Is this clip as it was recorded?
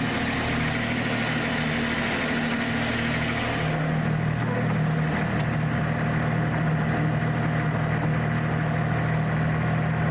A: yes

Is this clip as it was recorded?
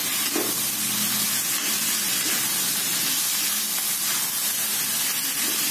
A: yes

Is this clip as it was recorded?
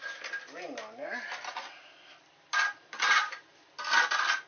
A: yes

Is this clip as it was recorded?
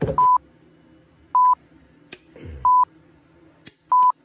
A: yes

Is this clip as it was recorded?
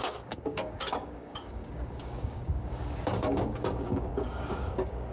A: no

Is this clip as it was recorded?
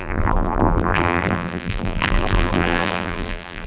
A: no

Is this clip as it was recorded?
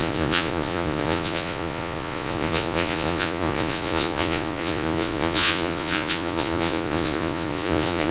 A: no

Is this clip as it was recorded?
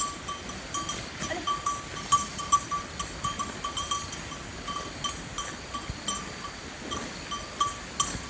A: yes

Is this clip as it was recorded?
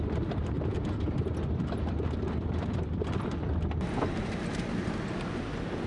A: no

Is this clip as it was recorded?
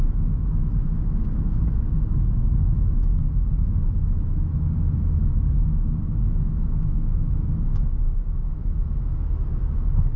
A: no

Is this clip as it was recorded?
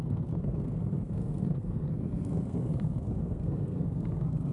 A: no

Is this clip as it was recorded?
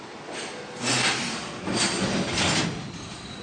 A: yes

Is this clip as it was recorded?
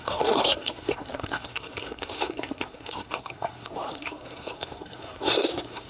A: no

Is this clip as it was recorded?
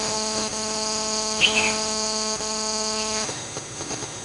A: no